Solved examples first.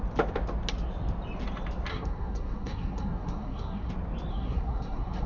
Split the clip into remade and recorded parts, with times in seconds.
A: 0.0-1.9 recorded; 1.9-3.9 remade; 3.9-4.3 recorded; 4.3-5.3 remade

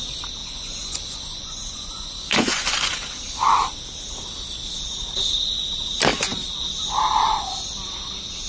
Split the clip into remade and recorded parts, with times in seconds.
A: 0.0-0.4 recorded; 0.4-2.7 remade; 2.7-8.5 recorded

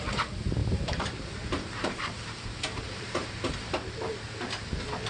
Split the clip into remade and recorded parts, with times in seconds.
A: 0.0-0.6 recorded; 0.6-3.7 remade; 3.7-5.1 recorded

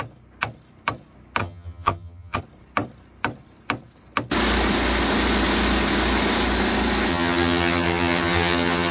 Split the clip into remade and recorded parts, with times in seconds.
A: 0.0-1.4 recorded; 1.4-2.4 remade; 2.4-7.1 recorded; 7.1-8.9 remade

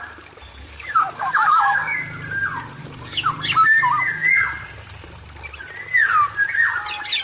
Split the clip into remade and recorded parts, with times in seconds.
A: 0.0-0.5 recorded; 0.5-2.0 remade; 2.0-2.8 recorded; 2.8-3.3 remade; 3.3-7.2 recorded

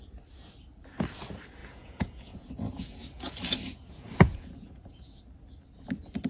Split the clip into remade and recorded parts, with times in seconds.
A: 0.0-1.6 recorded; 1.6-5.2 remade; 5.2-6.3 recorded